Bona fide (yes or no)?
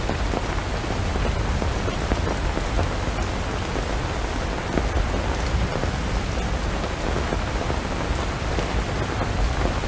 yes